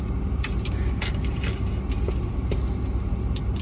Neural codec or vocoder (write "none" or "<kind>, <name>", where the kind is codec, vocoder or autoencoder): none